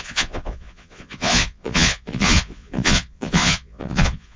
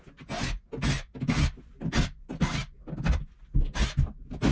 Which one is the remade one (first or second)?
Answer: first